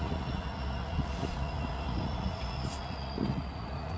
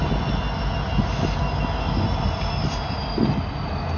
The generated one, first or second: first